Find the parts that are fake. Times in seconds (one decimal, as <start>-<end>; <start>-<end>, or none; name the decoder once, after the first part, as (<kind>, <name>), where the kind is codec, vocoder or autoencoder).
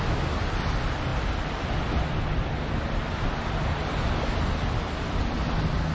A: none